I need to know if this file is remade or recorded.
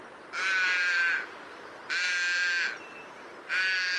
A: recorded